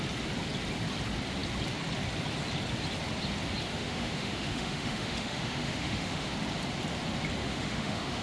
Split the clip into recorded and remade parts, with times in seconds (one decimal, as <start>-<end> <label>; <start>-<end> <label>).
0.0-3.7 recorded; 3.7-6.3 remade; 6.3-7.4 recorded; 7.4-8.2 remade